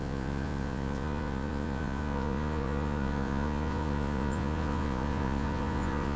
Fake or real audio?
fake